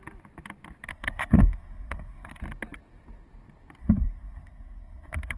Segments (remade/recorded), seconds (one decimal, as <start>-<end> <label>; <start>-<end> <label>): 0.0-0.9 recorded; 0.9-2.4 remade; 2.4-3.8 recorded; 3.8-5.4 remade